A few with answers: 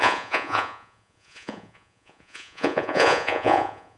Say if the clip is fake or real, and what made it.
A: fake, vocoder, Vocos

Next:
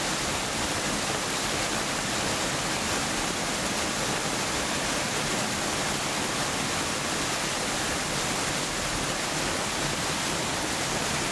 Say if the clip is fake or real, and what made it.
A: real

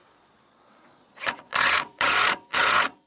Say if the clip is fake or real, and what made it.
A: fake, vocoder, Vocos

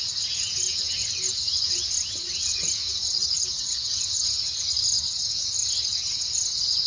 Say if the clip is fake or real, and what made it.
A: fake, vocoder, Vocos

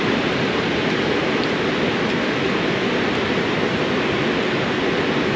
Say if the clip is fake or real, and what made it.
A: real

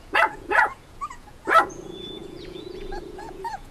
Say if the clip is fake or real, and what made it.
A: fake, vocoder, Vocos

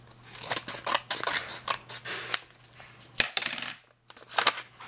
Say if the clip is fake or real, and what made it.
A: real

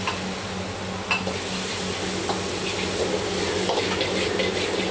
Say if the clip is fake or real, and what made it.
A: real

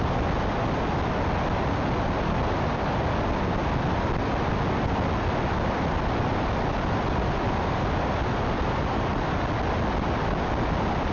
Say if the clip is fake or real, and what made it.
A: real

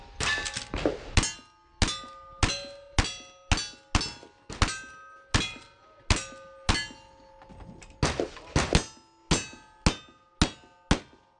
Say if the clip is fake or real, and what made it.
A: real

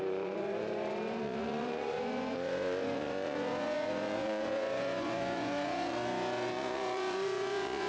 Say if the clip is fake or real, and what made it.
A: fake, vocoder, Vocos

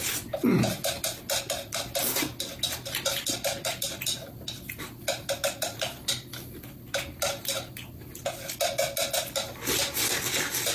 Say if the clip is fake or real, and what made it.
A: real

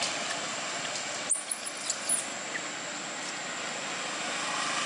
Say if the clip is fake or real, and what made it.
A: real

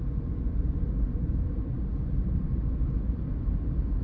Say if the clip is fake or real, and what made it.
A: real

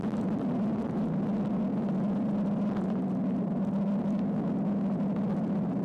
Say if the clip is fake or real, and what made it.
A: real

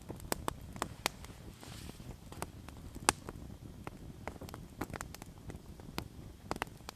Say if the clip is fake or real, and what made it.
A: real